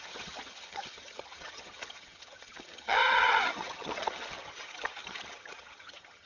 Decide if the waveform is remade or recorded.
remade